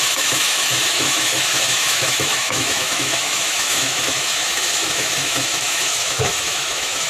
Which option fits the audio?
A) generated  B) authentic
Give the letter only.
A